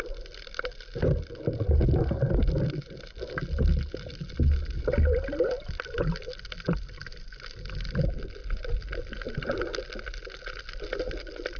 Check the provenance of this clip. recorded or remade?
recorded